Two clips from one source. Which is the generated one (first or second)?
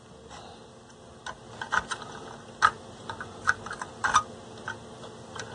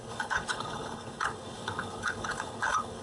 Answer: second